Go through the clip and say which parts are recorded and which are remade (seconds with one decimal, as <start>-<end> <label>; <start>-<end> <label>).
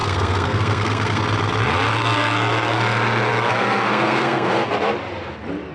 0.0-1.2 remade; 1.2-1.9 recorded; 1.9-2.8 remade; 2.8-3.3 recorded; 3.3-4.7 remade; 4.7-5.7 recorded